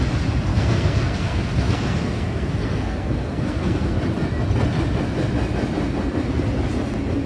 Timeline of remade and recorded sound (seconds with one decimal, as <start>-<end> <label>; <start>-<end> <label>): 0.0-0.5 recorded; 0.5-4.0 remade; 4.0-7.3 recorded